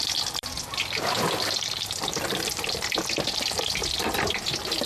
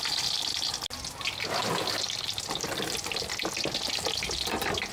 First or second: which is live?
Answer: second